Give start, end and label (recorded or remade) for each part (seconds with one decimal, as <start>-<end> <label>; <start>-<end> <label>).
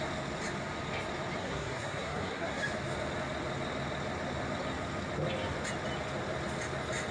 0.0-1.4 recorded; 1.4-2.6 remade; 2.6-7.1 recorded